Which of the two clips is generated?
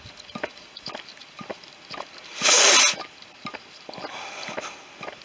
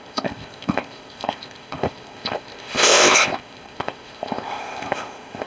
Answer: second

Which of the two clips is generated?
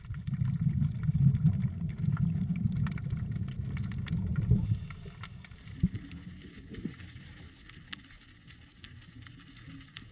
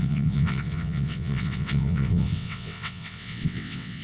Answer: second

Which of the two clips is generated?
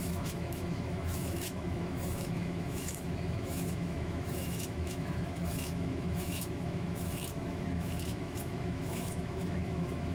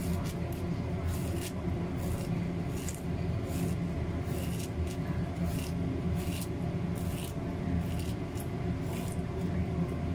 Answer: first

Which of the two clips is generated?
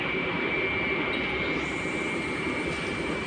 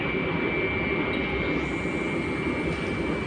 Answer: first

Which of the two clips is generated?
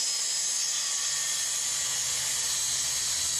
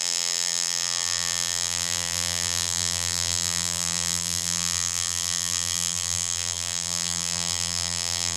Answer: second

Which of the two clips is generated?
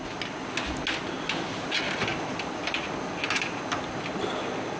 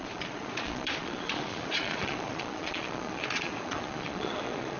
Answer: second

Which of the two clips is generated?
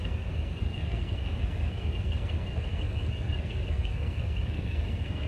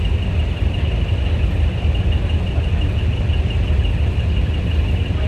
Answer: first